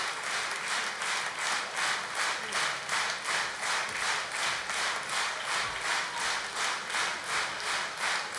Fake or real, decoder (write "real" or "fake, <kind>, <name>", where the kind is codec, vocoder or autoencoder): real